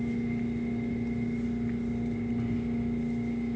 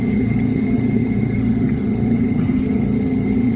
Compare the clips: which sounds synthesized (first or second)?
second